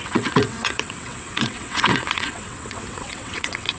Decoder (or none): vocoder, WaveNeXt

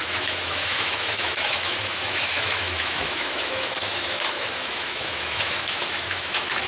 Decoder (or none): autoencoder, DAC-VAE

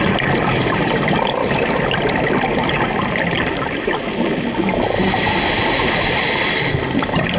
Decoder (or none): none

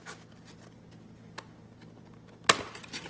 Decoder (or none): none